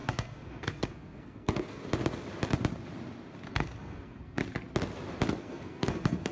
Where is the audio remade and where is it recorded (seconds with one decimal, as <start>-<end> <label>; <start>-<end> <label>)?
0.0-1.8 remade; 1.8-3.5 recorded; 3.5-4.4 remade; 4.4-5.4 recorded; 5.4-6.3 remade